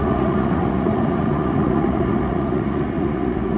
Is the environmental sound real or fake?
fake